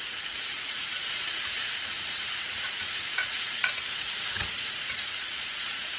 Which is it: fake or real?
fake